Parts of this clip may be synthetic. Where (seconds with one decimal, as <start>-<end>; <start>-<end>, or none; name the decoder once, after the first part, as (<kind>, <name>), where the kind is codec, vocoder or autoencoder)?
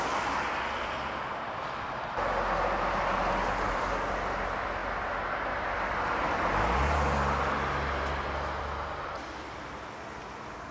none